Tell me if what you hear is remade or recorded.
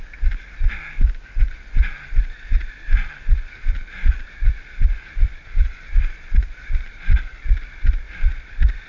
recorded